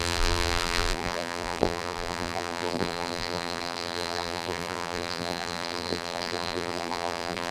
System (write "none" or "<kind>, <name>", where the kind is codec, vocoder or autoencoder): vocoder, BigVGAN v2